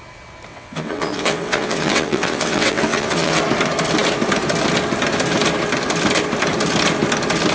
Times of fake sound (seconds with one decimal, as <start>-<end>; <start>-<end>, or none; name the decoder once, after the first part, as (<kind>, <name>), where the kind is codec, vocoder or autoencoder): 0.5-3.4 (vocoder, WaveNeXt)